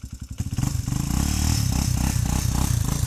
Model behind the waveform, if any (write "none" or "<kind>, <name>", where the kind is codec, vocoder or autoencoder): none